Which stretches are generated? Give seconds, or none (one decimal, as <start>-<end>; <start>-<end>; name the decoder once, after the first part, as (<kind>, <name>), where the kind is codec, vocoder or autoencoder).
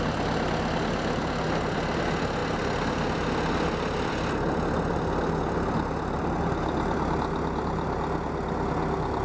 none